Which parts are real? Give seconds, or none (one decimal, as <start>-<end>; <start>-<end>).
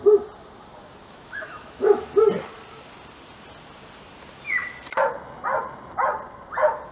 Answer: 0.0-1.0; 2.0-6.9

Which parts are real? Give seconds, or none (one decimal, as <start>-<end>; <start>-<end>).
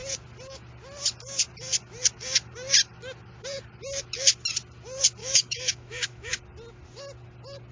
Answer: 0.0-5.2; 6.3-7.7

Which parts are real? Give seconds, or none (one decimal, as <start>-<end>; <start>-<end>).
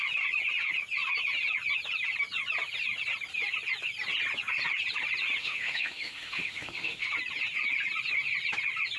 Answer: 0.0-5.4; 7.1-9.0